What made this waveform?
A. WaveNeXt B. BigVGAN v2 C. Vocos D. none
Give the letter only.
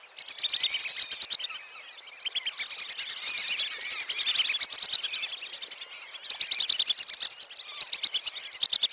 D